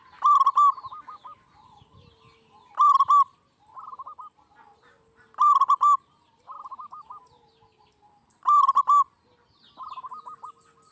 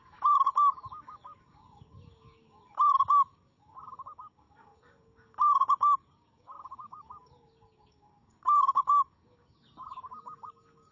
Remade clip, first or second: second